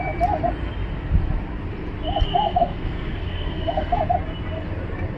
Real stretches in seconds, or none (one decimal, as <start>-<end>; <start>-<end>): 0.0-2.3; 4.0-5.2